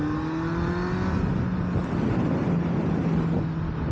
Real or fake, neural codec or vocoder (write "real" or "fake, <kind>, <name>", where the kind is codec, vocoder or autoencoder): real